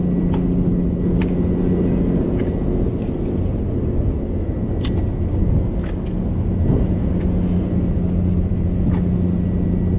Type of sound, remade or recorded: recorded